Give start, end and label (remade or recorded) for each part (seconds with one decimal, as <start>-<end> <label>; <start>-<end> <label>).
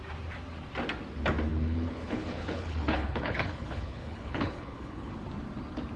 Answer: 0.0-1.5 recorded; 1.5-5.1 remade; 5.1-6.0 recorded